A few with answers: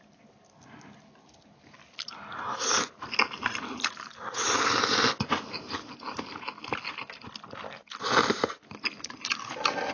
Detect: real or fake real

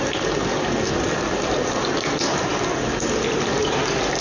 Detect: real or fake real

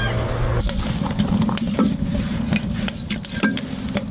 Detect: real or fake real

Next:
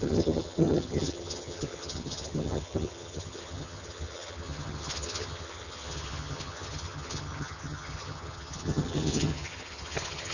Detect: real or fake fake